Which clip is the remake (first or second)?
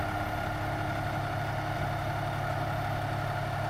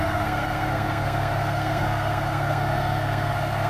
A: second